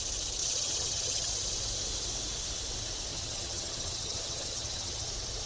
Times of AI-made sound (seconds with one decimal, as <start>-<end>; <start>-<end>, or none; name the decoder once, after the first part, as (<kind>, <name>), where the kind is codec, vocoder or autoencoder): 0.4-1.3 (vocoder, HiFi-GAN); 3.1-5.1